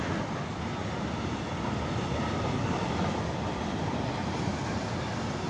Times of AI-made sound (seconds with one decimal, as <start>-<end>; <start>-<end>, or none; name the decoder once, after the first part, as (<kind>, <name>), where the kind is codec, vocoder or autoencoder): none